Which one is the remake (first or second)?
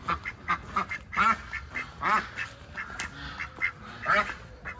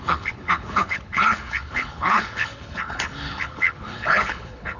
second